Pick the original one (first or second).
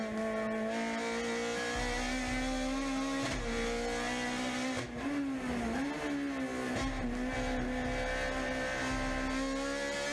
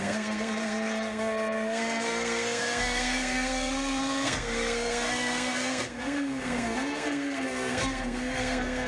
first